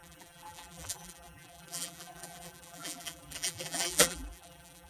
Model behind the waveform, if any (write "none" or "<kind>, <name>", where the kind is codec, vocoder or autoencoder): vocoder, BigVGAN v2